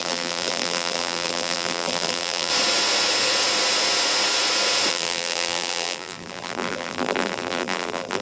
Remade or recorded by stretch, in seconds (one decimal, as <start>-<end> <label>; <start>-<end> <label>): 0.0-2.5 remade; 2.5-4.9 recorded; 4.9-8.2 remade

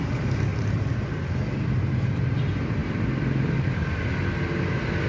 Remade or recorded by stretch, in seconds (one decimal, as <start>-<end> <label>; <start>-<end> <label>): 0.0-0.5 recorded; 0.5-1.3 remade; 1.3-5.1 recorded

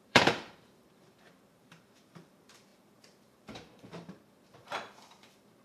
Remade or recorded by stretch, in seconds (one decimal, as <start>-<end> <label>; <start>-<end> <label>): 0.0-5.6 remade

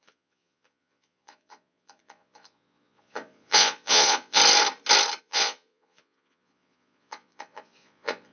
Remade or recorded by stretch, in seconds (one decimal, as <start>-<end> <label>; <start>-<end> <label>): 0.0-4.4 remade; 4.4-5.2 recorded; 5.2-8.3 remade